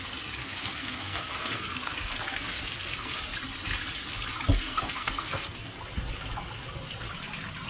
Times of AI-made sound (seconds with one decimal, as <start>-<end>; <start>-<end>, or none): 0.4-3.1; 4.5-5.8